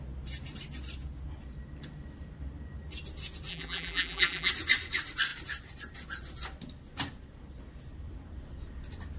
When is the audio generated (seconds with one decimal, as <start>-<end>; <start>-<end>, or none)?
3.5-4.5